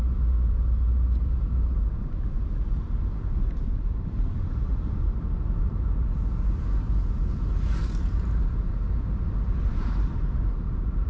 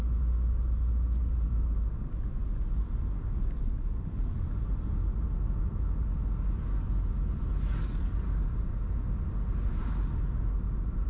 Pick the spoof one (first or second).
first